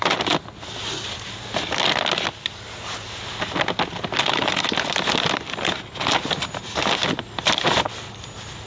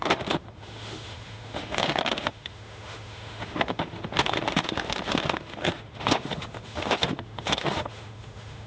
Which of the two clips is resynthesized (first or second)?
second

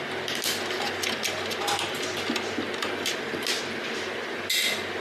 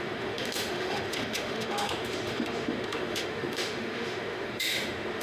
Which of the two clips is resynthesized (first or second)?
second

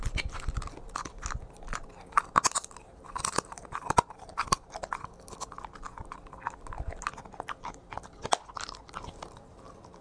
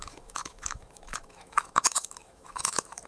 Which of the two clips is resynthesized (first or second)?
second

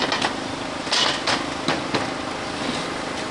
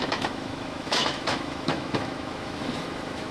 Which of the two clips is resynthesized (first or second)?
second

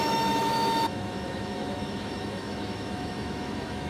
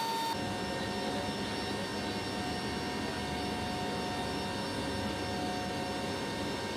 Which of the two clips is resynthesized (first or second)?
first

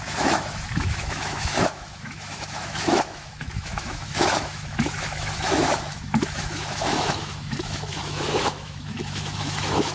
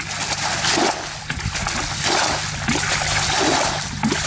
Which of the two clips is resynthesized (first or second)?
first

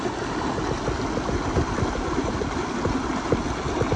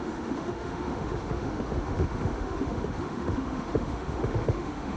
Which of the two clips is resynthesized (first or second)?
second